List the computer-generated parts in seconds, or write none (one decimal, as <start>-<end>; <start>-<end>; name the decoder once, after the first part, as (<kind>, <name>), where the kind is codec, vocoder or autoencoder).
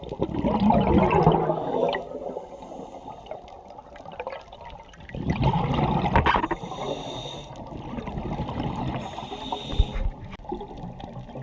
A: none